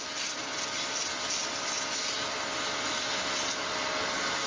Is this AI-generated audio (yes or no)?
no